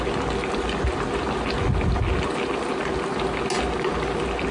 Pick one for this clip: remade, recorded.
recorded